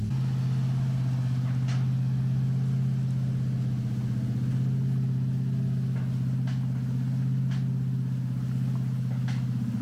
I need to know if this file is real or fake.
real